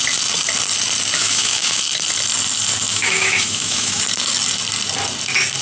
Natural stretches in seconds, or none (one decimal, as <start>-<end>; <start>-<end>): 0.0-1.2; 1.8-2.9; 4.0-5.6